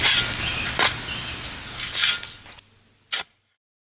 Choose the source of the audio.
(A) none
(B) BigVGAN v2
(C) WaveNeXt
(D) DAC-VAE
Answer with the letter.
A